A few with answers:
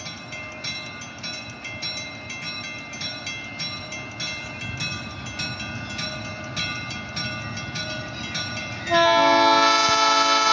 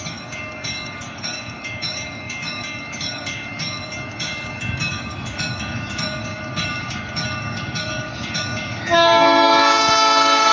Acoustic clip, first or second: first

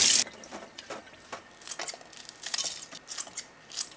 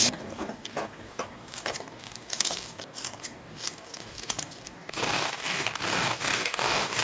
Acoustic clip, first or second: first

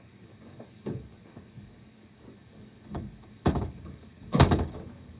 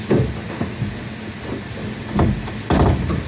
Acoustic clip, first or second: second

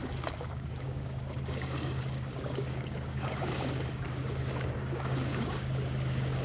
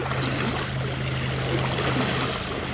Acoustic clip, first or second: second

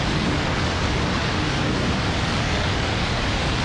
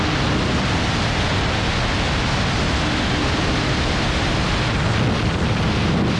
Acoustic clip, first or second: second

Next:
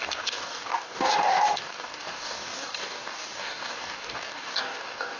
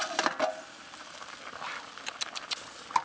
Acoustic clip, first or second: second